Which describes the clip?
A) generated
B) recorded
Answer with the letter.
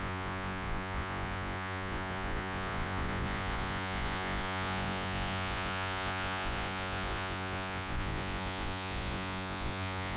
A